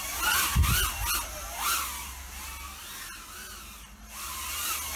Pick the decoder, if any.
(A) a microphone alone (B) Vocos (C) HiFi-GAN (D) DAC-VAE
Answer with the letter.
A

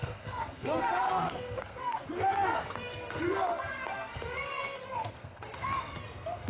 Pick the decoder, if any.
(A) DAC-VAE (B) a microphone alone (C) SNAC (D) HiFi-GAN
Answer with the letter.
C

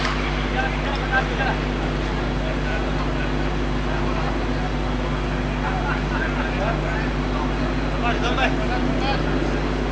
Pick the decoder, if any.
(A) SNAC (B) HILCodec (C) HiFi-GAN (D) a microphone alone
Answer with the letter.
D